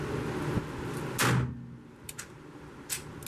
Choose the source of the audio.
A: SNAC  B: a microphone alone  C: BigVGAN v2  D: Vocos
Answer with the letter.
B